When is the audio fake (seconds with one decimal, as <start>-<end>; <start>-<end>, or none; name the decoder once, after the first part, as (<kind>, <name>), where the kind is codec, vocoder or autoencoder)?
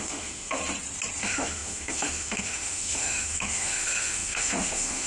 0.0-0.6 (autoencoder, DAC-VAE); 1.2-5.1